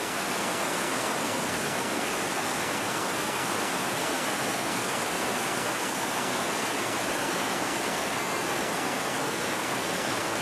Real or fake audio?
fake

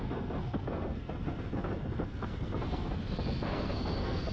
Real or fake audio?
fake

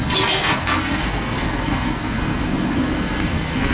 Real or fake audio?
fake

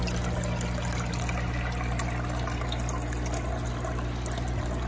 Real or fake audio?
real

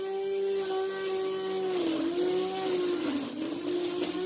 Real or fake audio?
real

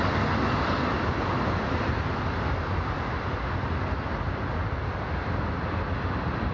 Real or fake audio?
real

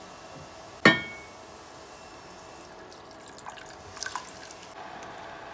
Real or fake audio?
real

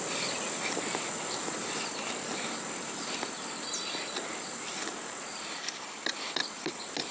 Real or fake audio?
real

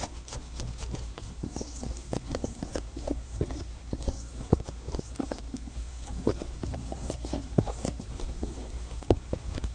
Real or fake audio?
fake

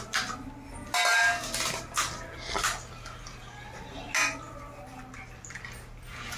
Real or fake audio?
real